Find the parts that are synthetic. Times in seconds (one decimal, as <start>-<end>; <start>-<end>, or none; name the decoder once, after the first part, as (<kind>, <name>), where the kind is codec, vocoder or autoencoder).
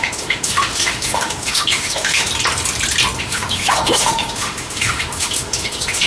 0.0-2.3 (autoencoder, DAC-VAE); 3.2-6.1